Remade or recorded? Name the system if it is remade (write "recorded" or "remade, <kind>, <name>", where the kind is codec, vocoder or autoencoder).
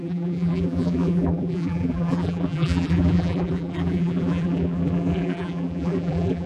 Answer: remade, vocoder, BigVGAN v2